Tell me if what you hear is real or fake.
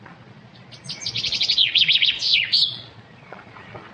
fake